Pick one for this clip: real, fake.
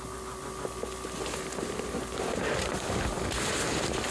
real